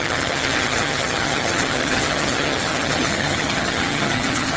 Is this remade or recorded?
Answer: remade